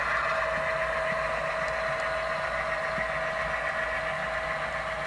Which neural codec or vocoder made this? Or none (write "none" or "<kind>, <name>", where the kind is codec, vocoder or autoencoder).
none